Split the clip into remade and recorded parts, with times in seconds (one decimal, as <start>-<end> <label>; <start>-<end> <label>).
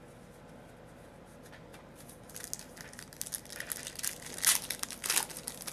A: 0.0-5.7 recorded